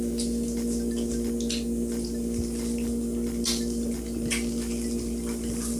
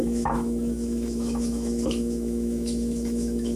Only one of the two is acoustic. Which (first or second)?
first